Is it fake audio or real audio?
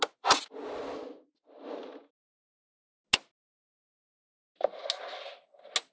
real